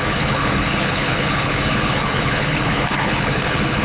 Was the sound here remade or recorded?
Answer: remade